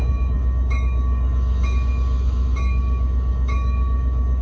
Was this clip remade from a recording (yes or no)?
yes